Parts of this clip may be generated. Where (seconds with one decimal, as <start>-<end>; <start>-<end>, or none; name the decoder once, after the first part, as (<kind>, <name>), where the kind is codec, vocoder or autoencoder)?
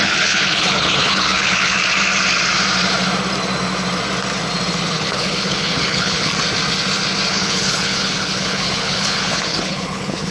0.0-1.8 (codec, HILCodec); 4.9-6.3; 7.3-10.3